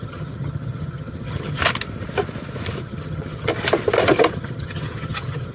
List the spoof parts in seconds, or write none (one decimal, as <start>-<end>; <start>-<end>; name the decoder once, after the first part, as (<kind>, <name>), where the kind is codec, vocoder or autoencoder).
0.0-1.6 (vocoder, HiFi-GAN); 2.8-3.5; 4.3-5.5

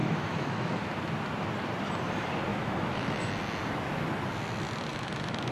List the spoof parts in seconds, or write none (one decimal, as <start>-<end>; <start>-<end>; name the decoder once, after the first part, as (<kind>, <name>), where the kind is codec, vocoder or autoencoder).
0.0-0.9 (autoencoder, DAC-VAE); 2.5-3.3; 4.9-5.5

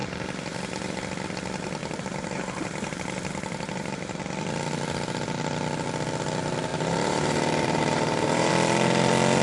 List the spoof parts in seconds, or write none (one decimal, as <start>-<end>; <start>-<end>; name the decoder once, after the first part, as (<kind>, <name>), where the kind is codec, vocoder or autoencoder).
0.0-1.0 (vocoder, BigVGAN v2); 1.8-4.2; 6.7-8.5